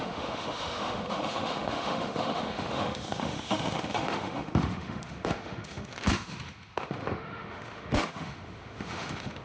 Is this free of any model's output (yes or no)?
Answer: no